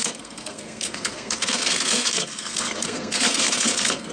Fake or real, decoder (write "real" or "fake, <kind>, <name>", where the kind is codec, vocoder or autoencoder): fake, codec, SNAC